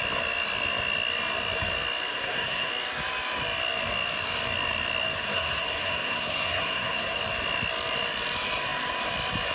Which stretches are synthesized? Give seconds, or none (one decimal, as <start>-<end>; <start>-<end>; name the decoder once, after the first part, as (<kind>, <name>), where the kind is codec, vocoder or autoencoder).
2.1-2.7 (codec, SNAC); 5.2-7.2